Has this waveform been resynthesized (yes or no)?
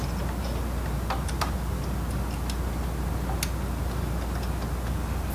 no